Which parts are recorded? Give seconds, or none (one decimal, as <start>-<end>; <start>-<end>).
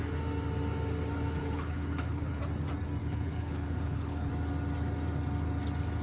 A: 0.0-1.4; 2.4-3.0; 4.3-6.0